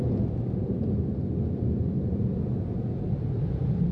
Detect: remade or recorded recorded